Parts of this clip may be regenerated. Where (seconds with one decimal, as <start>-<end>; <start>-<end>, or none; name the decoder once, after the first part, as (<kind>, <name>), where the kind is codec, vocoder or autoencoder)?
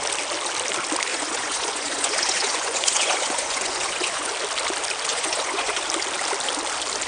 1.1-4.3 (vocoder, Vocos); 5.1-5.8